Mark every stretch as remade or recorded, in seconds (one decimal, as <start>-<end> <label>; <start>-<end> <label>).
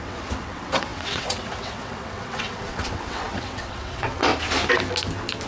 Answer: 0.0-4.3 remade; 4.3-5.5 recorded